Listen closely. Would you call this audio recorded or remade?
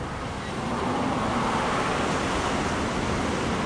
recorded